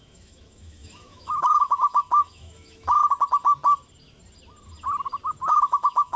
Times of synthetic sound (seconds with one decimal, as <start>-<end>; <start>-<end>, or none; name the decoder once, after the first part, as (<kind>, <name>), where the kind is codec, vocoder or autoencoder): 0.0-3.0 (autoencoder, DAC-VAE); 5.5-6.2

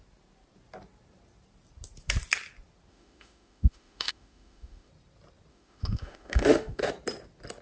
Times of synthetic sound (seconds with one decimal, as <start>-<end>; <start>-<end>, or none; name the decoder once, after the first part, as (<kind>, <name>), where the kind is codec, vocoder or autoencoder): 2.9-4.9 (autoencoder, DAC-VAE); 5.5-6.9

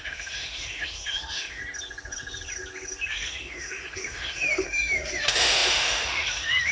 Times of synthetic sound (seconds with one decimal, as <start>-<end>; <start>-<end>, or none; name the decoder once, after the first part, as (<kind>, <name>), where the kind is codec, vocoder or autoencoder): 0.0-1.6 (autoencoder, DAC-VAE); 3.1-6.7

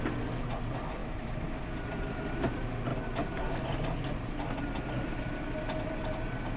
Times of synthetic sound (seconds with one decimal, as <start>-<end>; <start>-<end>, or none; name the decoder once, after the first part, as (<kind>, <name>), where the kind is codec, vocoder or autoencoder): 1.0-1.7 (autoencoder, DAC-VAE)

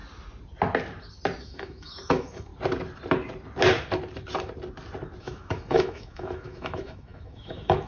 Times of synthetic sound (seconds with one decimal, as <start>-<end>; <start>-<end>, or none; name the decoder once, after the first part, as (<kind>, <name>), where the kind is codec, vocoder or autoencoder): 1.4-2.5 (autoencoder, DAC-VAE); 5.2-7.9

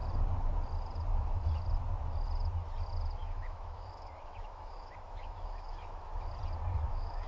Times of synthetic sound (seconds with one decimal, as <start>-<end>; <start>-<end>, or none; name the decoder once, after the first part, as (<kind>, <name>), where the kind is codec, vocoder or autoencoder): 3.2-6.3 (autoencoder, DAC-VAE); 6.7-7.3

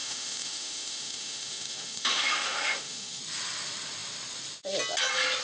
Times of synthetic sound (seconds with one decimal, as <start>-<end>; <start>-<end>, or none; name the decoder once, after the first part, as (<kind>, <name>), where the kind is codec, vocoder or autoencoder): 0.0-3.2 (autoencoder, DAC-VAE)

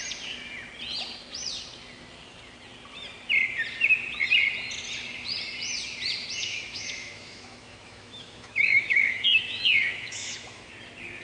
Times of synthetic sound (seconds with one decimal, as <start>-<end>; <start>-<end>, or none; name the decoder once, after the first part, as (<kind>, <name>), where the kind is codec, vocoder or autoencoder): 6.4-10.7 (autoencoder, DAC-VAE)